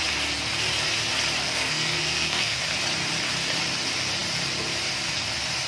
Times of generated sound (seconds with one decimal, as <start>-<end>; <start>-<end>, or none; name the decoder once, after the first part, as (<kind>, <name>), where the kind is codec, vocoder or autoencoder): 1.4-2.6 (codec, SNAC)